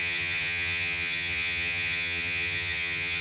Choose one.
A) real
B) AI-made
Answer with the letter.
B